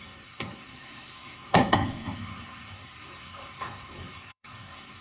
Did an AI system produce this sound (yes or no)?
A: yes